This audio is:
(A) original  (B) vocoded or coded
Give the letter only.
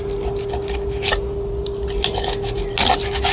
A